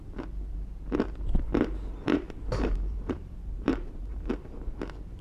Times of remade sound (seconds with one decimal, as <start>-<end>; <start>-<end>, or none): 1.9-4.3